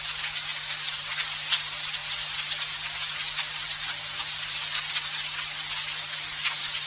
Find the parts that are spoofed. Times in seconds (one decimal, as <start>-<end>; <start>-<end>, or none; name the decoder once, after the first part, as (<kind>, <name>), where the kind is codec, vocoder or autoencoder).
none